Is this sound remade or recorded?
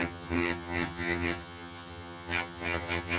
remade